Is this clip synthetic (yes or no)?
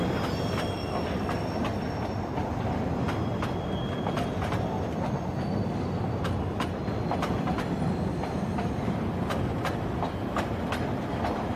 no